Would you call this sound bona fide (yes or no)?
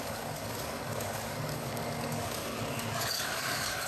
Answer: no